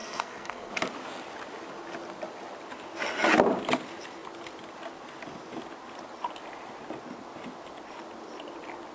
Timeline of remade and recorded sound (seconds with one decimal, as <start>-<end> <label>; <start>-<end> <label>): 0.0-0.7 remade; 0.7-8.9 recorded